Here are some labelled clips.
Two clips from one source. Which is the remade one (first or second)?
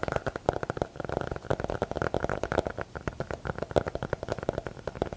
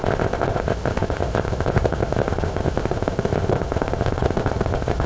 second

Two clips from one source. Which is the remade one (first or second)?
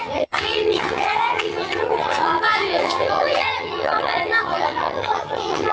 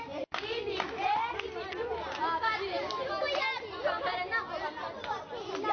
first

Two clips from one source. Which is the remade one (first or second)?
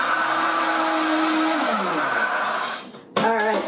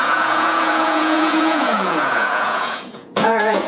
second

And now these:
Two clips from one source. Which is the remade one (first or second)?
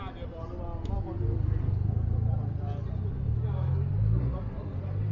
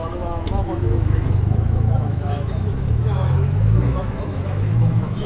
second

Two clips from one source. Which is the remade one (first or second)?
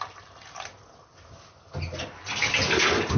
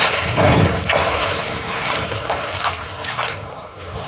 second